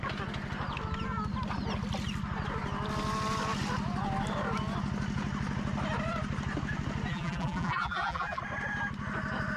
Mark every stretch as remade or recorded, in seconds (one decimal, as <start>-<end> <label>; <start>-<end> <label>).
0.0-7.1 recorded; 7.1-8.4 remade; 8.4-9.6 recorded